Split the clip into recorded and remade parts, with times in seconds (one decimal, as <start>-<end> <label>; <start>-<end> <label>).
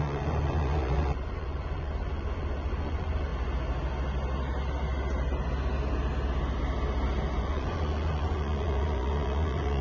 0.0-3.3 remade; 3.3-7.4 recorded; 7.4-9.8 remade